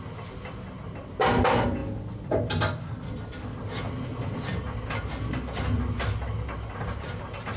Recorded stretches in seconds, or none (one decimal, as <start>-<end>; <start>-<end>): 0.0-7.6